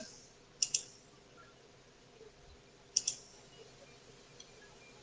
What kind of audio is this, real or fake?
real